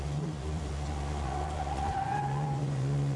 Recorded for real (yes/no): no